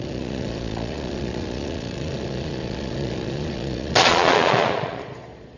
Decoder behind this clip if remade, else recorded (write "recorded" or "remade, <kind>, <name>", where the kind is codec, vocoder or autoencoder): remade, vocoder, Vocos